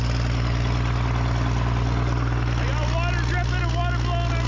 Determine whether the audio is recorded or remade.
recorded